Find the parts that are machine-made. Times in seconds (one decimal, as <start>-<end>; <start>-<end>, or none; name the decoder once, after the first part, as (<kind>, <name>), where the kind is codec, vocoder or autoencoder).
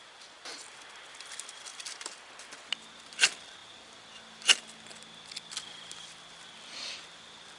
1.7-2.3 (vocoder, BigVGAN v2); 3.6-4.6